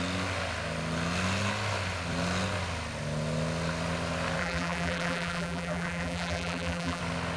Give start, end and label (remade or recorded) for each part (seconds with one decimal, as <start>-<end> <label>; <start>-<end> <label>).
0.0-4.4 recorded; 4.4-7.0 remade; 7.0-7.4 recorded